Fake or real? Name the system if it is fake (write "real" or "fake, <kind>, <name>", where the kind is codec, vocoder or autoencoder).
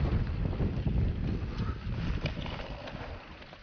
real